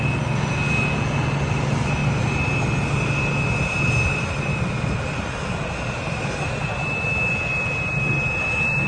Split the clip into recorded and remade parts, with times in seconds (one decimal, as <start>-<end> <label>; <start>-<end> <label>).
0.0-6.8 recorded; 6.8-7.3 remade; 7.3-8.9 recorded